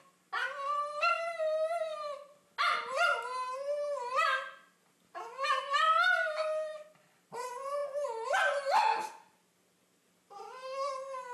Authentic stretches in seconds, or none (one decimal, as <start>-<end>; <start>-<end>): 0.0-11.3